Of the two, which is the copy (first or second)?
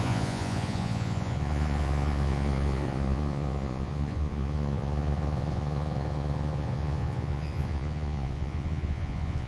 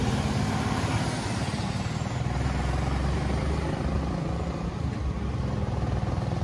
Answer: first